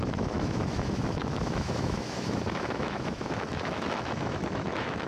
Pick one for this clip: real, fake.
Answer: fake